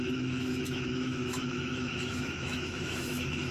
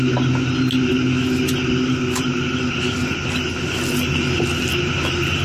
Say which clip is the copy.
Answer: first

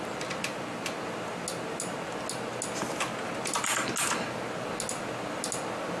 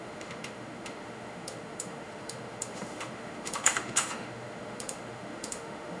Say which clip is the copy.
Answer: second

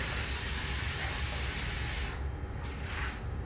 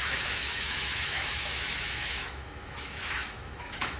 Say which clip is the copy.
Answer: second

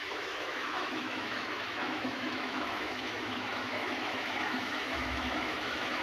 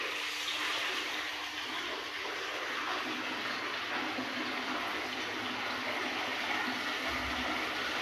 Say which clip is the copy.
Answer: first